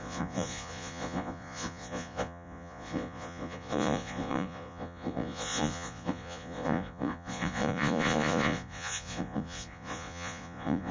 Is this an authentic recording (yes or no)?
no